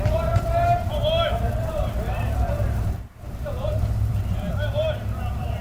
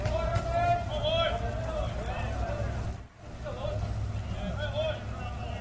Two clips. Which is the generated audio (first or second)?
first